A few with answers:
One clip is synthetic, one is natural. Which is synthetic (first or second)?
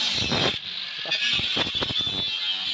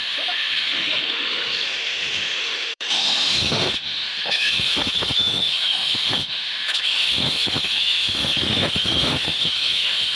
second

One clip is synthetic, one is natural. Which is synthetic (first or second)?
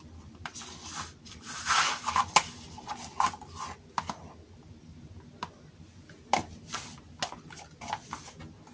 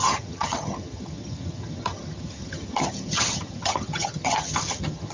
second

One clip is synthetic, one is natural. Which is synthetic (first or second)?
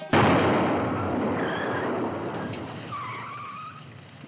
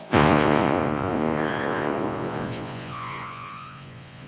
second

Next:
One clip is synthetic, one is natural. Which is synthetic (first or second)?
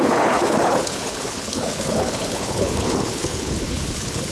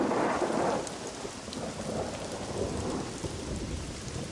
first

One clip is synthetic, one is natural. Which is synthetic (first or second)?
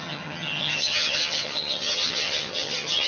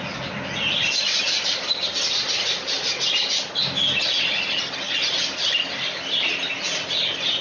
first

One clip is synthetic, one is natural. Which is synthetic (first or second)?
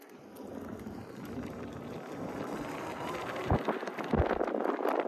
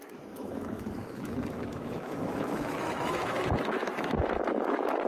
second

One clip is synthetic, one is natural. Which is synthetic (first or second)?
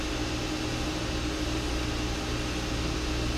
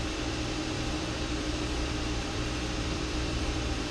second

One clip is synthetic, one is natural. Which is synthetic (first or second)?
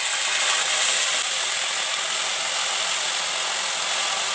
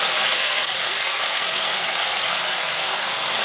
second